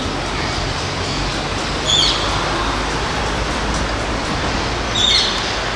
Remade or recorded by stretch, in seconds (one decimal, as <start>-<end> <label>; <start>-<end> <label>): 0.0-5.8 recorded